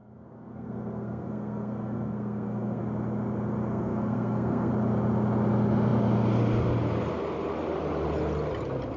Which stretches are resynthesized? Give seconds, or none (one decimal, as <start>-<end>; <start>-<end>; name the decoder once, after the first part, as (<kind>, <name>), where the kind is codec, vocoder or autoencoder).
0.0-2.8 (codec, SNAC); 3.7-4.7